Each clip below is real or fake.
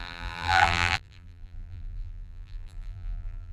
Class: fake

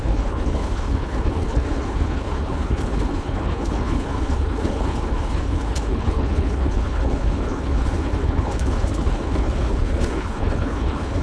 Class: fake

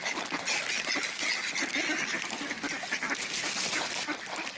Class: real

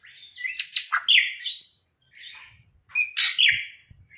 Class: real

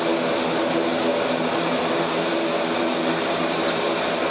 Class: real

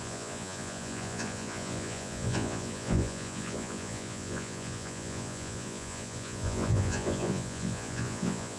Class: fake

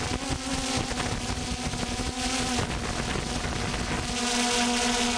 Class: real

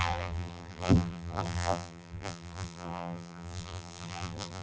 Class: fake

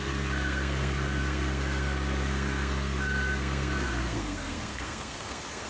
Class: fake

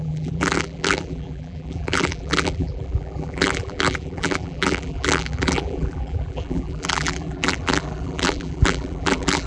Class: fake